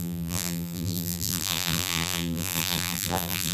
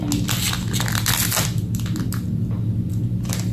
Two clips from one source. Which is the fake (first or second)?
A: first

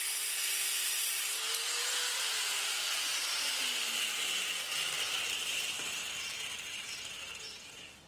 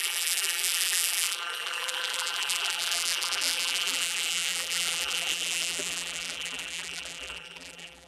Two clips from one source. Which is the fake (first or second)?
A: second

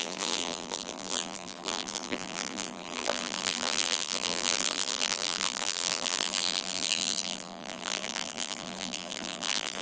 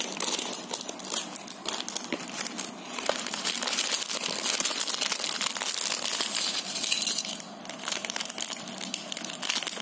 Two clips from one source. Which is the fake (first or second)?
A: first